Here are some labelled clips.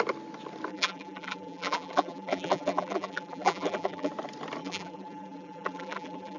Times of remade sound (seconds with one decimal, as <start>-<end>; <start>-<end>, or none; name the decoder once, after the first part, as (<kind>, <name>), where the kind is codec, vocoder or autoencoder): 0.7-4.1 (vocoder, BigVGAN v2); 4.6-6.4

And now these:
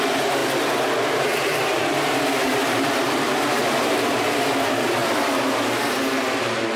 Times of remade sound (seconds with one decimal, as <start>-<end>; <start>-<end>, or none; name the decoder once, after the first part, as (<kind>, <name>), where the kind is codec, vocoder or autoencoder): 0.0-0.4 (vocoder, BigVGAN v2); 1.2-6.8

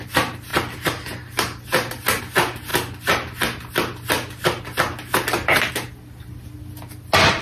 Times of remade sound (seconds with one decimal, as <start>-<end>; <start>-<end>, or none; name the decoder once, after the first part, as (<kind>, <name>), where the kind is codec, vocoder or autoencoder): none